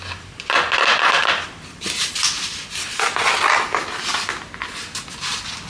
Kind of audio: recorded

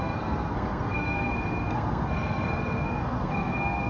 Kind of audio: remade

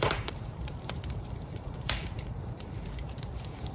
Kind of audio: remade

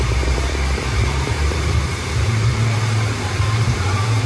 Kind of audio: remade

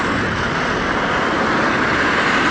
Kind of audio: recorded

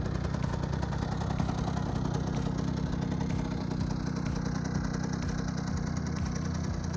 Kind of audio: recorded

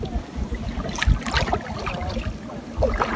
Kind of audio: recorded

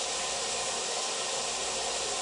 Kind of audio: recorded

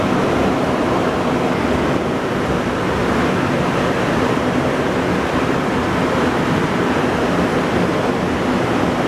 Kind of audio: recorded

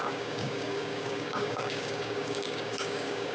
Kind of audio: remade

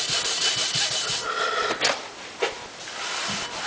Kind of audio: recorded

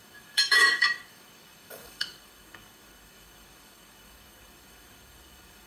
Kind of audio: remade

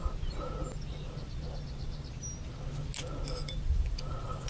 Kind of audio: recorded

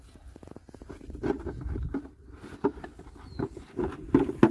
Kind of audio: recorded